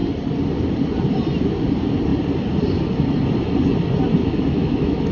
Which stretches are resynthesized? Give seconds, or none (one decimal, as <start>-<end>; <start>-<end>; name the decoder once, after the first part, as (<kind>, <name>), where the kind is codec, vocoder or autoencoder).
4.2-5.1 (autoencoder, DAC-VAE)